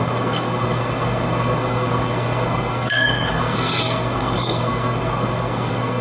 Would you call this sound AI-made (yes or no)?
yes